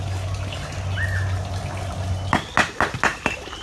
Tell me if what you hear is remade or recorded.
recorded